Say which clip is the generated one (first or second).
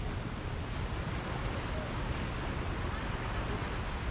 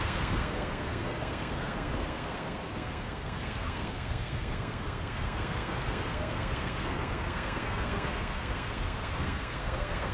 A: second